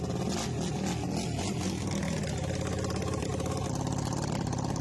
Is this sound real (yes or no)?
yes